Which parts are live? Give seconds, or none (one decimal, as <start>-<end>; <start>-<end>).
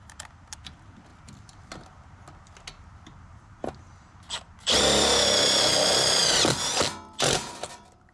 0.0-8.1